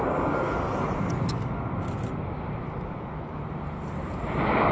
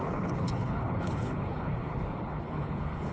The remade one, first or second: second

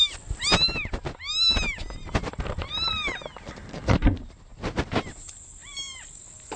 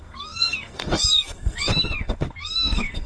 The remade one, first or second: second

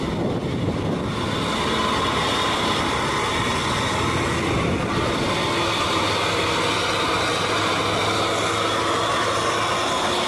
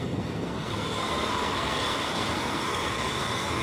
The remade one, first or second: second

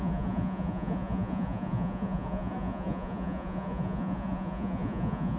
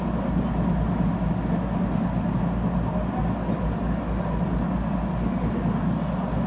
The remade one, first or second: first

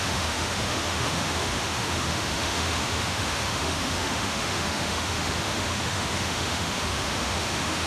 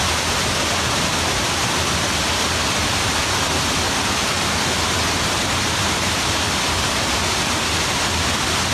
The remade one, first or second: first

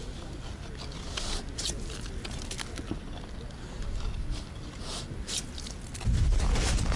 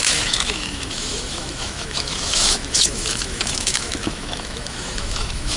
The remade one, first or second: second